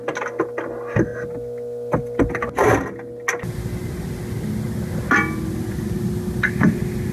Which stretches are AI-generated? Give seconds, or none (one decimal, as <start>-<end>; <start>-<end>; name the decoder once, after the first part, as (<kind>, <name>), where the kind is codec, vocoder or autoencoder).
none